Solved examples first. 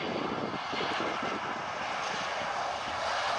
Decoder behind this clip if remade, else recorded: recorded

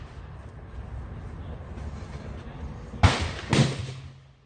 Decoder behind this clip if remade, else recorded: recorded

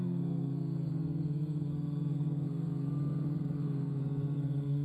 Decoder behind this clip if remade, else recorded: remade, codec, SNAC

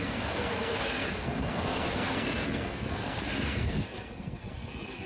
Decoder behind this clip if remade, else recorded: remade, codec, SNAC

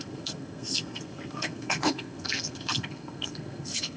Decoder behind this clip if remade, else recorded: remade, codec, SNAC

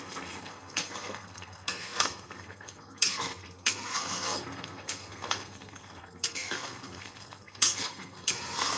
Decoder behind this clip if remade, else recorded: remade, codec, SNAC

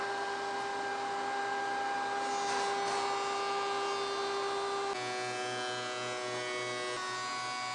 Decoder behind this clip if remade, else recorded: recorded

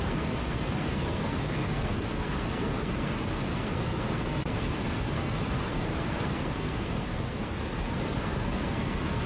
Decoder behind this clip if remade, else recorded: remade, codec, SNAC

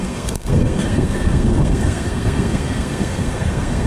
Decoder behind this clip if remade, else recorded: remade, codec, SNAC